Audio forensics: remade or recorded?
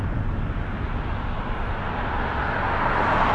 recorded